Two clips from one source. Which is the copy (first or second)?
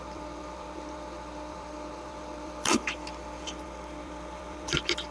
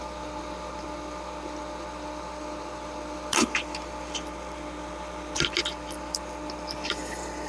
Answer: first